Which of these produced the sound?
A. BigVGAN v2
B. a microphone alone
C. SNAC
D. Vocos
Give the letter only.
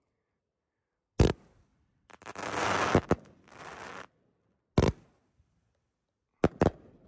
B